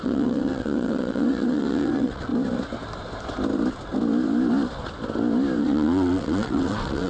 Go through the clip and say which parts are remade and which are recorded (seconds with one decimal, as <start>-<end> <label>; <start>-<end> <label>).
0.0-2.3 remade; 2.3-5.6 recorded; 5.6-7.1 remade